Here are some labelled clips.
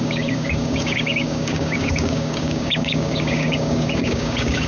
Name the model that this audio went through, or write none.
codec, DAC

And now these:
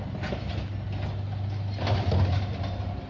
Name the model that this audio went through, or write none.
none